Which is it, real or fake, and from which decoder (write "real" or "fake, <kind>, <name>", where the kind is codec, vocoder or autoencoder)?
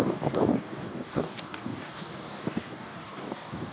fake, codec, DAC